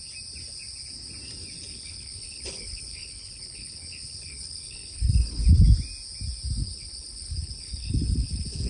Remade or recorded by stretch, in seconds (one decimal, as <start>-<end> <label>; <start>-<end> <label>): 0.0-1.7 recorded; 1.7-5.4 remade; 5.4-6.6 recorded; 6.6-8.7 remade

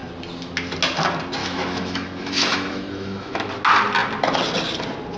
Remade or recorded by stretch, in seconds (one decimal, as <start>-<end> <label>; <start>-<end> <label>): 0.0-1.4 recorded; 1.4-3.5 remade; 3.5-5.2 recorded

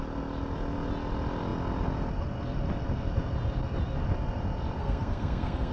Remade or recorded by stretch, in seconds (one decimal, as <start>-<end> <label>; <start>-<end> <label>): 0.0-4.8 recorded; 4.8-5.7 remade

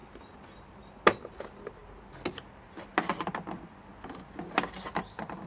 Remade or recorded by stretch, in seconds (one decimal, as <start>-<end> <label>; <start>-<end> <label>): 0.0-5.5 recorded

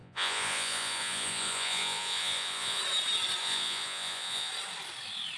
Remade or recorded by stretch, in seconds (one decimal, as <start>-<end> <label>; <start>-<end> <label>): 0.0-2.8 remade; 2.8-3.4 recorded; 3.4-4.5 remade; 4.5-5.4 recorded

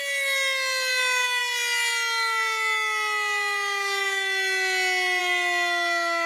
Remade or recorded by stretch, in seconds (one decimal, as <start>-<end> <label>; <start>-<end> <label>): 0.0-6.3 recorded